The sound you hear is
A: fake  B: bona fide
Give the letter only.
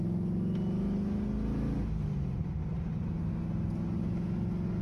B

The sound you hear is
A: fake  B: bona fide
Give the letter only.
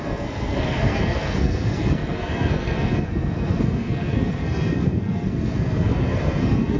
A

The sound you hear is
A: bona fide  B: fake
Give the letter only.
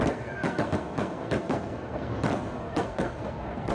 B